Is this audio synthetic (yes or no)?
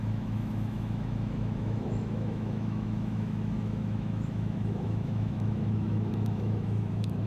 yes